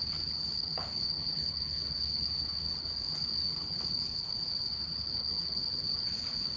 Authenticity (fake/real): fake